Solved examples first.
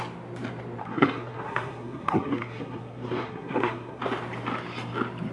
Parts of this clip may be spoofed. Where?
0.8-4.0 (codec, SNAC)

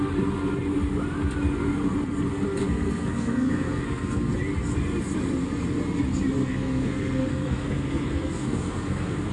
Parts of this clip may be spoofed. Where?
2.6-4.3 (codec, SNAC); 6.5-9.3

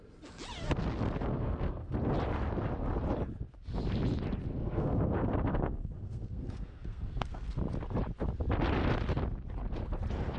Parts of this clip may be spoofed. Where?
1.3-1.9 (codec, SNAC); 4.6-7.6

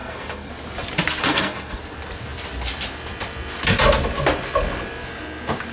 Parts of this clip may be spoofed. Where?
0.0-0.5 (codec, SNAC); 1.2-1.8